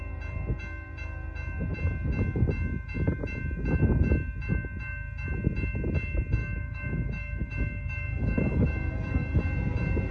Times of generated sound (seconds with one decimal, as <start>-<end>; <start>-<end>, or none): 6.4-9.4